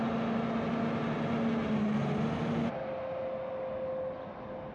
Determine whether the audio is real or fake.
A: real